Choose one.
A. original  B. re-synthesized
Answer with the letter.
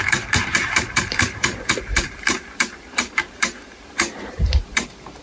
B